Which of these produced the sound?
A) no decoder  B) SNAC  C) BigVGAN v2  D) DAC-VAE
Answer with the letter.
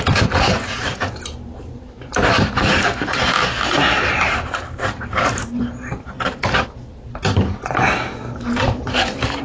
C